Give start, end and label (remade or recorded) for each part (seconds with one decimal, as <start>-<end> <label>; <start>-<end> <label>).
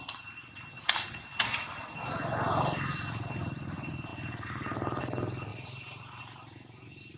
0.0-5.5 recorded; 5.5-6.2 remade; 6.2-7.2 recorded